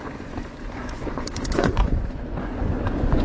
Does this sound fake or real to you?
fake